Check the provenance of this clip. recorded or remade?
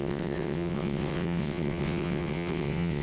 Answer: remade